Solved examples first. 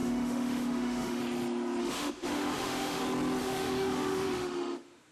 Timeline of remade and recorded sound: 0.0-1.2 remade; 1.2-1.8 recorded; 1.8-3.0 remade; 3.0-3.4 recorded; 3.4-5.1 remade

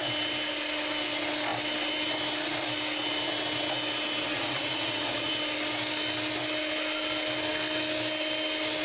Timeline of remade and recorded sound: 0.0-4.3 recorded; 4.3-5.3 remade; 5.3-8.8 recorded